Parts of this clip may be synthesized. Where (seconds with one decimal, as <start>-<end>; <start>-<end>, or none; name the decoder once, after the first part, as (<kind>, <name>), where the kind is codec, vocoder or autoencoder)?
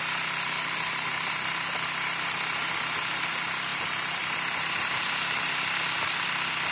3.7-6.3 (vocoder, BigVGAN v2)